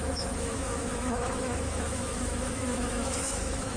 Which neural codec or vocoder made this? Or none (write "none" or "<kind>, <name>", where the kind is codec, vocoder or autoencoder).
autoencoder, DAC-VAE